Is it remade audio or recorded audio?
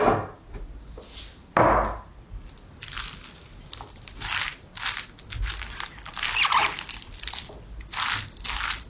recorded